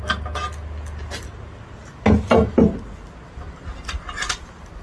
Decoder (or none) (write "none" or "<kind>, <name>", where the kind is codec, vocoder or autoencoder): none